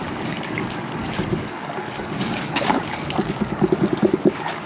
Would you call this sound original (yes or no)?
no